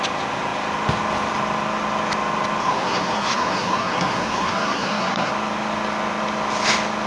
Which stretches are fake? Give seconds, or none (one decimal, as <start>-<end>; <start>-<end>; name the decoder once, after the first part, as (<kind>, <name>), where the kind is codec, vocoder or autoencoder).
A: 2.6-5.3 (codec, SNAC)